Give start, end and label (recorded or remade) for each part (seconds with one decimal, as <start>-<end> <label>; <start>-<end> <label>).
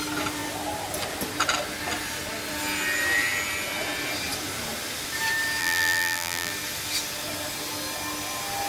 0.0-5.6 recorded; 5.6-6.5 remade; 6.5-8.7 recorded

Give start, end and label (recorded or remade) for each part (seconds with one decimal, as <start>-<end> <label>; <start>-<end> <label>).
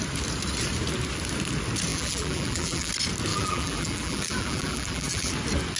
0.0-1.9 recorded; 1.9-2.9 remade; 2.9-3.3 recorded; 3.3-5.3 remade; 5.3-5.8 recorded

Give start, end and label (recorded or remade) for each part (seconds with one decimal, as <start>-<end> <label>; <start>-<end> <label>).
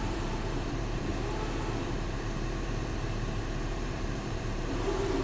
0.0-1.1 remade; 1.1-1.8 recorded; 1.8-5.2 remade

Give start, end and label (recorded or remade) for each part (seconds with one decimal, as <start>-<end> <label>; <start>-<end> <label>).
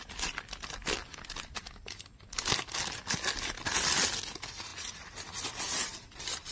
0.0-4.7 recorded; 4.7-5.5 remade; 5.5-6.5 recorded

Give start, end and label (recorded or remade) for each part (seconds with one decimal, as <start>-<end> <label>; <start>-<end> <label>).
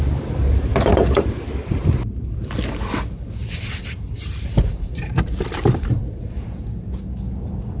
0.0-0.7 recorded; 0.7-2.2 remade; 2.2-3.4 recorded; 3.4-6.6 remade; 6.6-7.8 recorded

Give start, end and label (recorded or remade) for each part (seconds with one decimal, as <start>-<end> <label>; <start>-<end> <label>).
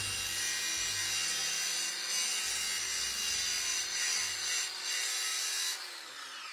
0.0-1.4 recorded; 1.4-2.1 remade; 2.1-3.7 recorded; 3.7-5.4 remade; 5.4-6.5 recorded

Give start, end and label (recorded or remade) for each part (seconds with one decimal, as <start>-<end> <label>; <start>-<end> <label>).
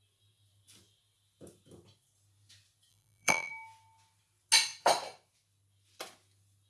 0.0-2.9 recorded; 2.9-3.5 remade; 3.5-6.7 recorded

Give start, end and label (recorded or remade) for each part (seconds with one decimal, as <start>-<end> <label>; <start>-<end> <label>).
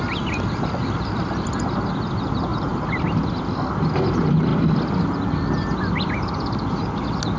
0.0-7.4 recorded